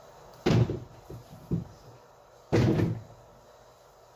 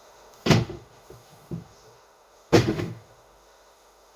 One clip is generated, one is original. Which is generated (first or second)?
second